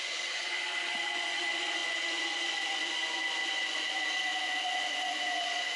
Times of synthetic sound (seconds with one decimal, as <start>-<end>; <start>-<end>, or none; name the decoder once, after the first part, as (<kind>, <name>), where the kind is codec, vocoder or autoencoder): 0.0-5.8 (vocoder, Vocos)